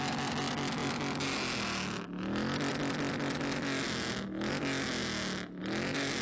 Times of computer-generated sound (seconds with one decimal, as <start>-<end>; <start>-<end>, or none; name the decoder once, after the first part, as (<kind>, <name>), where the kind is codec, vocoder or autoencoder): none